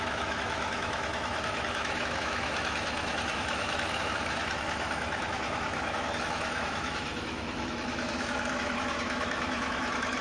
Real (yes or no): no